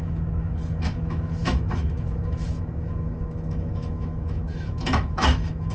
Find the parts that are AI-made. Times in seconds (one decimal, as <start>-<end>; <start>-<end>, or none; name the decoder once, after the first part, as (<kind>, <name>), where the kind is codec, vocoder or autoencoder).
0.0-5.7 (autoencoder, DAC-VAE)